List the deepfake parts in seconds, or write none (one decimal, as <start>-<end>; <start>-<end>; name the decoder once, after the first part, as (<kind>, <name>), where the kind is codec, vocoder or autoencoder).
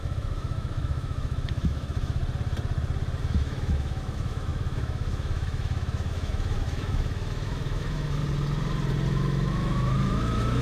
0.0-2.2 (autoencoder, DAC-VAE); 3.2-8.2; 9.1-10.6